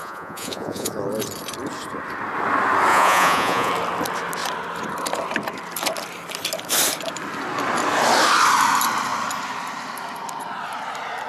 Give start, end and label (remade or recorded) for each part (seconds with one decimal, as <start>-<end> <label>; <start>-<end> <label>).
0.0-0.9 remade; 0.9-2.9 recorded; 2.9-3.7 remade; 3.7-11.3 recorded